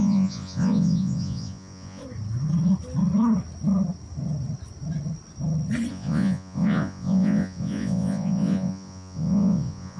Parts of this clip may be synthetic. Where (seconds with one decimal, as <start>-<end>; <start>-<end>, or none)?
0.0-2.0; 5.9-10.0